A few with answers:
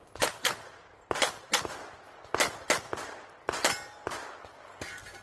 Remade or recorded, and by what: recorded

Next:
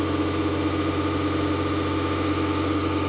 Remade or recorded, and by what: recorded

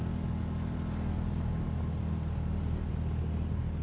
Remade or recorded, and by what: recorded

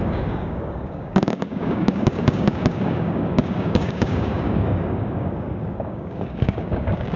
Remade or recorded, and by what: remade, codec, DAC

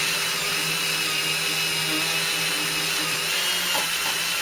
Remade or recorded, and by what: recorded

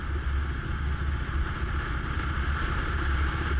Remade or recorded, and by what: recorded